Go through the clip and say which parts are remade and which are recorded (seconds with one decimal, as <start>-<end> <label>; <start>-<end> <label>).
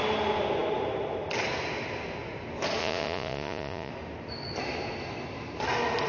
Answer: 0.0-2.8 recorded; 2.8-3.9 remade; 3.9-6.1 recorded